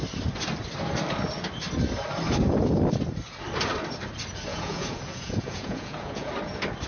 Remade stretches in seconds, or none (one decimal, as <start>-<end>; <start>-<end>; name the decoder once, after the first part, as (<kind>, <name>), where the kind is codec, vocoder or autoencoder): 4.5-6.3 (vocoder, Vocos)